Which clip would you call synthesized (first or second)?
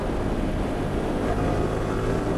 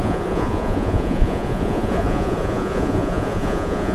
second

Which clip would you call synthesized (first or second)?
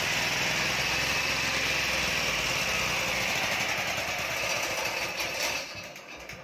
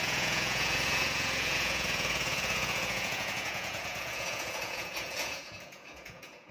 second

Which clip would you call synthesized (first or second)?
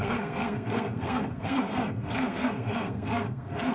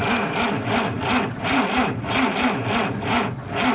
first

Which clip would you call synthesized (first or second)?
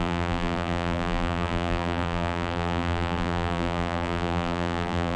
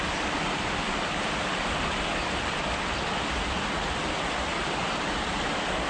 first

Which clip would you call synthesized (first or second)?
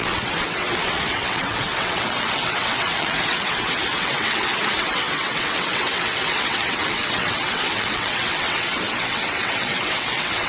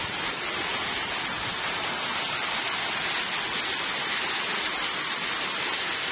first